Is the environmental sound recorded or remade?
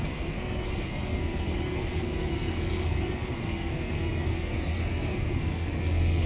remade